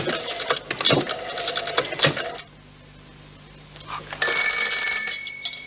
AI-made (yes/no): no